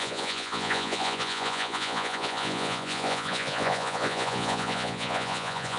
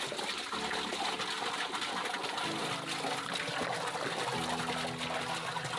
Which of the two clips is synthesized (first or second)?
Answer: first